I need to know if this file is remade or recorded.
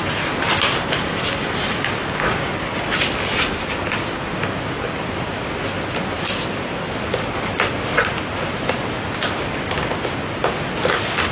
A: recorded